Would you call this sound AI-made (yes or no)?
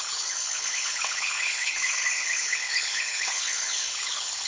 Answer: yes